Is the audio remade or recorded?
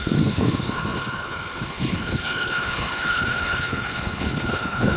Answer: remade